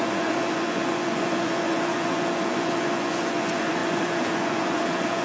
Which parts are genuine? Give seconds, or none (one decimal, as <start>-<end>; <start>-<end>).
none